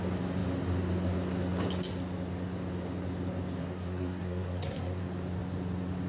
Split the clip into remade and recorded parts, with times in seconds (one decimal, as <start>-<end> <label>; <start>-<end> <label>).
0.0-3.6 recorded; 3.6-5.0 remade; 5.0-6.1 recorded